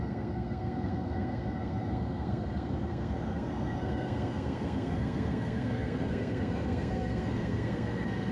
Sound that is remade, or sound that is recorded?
remade